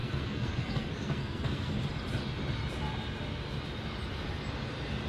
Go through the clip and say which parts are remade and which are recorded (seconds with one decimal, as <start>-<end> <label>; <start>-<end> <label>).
0.0-1.9 remade; 1.9-5.1 recorded